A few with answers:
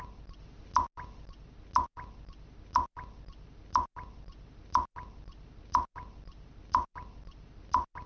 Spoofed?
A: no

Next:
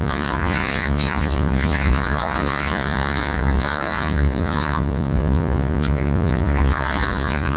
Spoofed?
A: yes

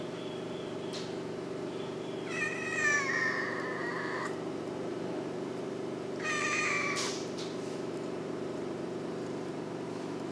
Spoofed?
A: yes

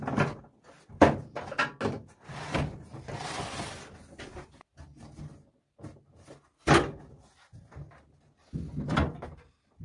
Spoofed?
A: no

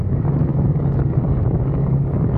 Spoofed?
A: yes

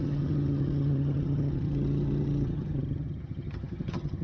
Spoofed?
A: yes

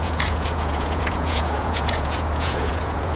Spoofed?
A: yes